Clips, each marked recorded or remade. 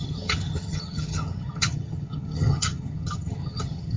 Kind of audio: remade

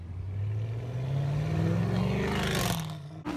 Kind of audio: recorded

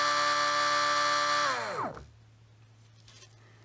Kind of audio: recorded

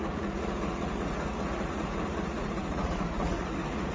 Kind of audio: remade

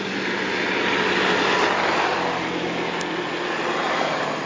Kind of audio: recorded